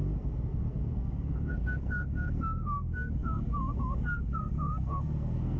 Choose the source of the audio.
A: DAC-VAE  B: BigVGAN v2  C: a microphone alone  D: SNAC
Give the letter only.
D